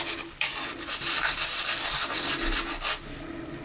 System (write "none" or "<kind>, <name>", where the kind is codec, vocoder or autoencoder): none